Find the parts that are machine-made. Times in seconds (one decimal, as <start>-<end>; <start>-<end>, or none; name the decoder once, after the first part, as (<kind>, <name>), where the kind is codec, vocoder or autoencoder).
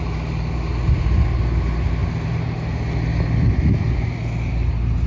none